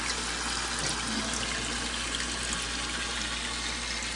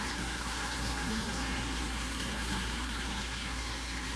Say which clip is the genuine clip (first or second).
first